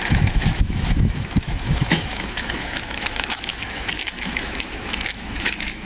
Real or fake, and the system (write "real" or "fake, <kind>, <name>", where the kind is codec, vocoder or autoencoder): fake, autoencoder, DAC-VAE